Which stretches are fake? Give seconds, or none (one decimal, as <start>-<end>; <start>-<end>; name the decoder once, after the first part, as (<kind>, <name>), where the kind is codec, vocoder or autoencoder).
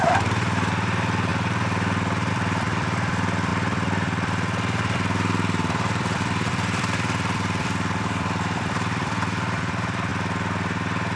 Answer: 0.0-1.3 (vocoder, BigVGAN v2); 2.3-10.1